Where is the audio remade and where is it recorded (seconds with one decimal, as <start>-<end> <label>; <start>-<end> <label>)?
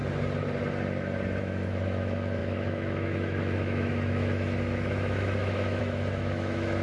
0.0-1.4 recorded; 1.4-6.8 remade